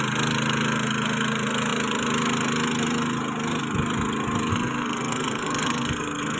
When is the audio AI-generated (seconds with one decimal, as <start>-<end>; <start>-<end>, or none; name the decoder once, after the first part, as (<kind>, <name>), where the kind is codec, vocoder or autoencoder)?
4.5-6.4 (codec, SNAC)